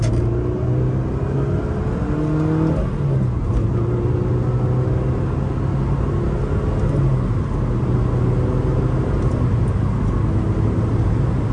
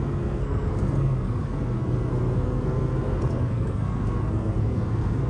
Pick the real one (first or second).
first